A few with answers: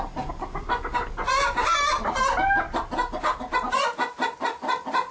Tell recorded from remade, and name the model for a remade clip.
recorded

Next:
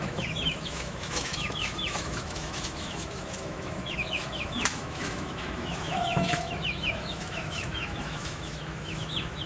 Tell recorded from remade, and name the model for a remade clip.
remade, autoencoder, DAC-VAE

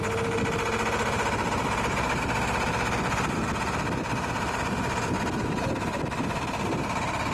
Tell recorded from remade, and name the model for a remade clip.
recorded